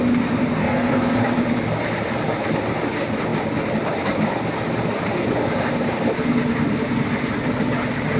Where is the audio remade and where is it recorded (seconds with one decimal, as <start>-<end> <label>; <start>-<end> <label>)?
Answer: 0.0-0.6 recorded; 0.6-1.2 remade; 1.2-8.2 recorded